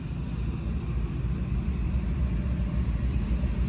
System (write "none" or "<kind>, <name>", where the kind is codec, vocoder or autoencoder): none